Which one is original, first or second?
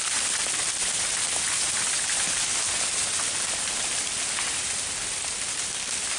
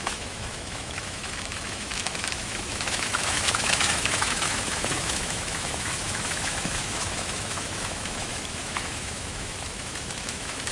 first